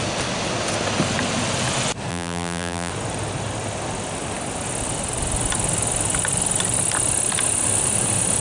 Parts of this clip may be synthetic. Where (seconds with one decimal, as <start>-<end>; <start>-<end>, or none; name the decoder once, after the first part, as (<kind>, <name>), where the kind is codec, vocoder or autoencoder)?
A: 2.1-2.9 (vocoder, BigVGAN v2)